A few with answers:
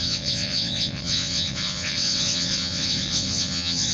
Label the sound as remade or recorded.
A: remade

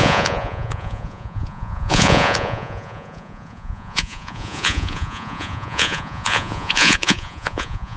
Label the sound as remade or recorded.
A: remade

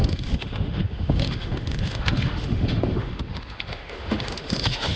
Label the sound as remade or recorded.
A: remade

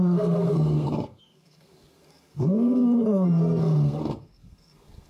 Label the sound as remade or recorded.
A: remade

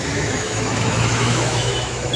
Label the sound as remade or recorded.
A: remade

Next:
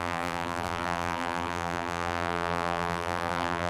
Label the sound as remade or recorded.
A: remade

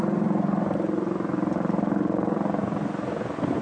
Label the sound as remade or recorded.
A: recorded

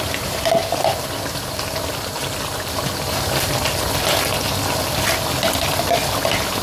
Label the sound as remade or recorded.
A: recorded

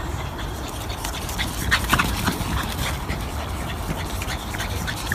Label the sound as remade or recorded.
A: remade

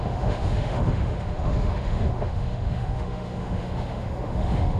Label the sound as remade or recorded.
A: remade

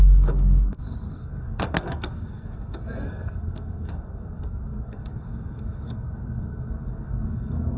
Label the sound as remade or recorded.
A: remade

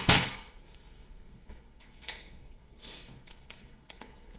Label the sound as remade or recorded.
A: remade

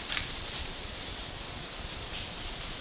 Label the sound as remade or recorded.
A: remade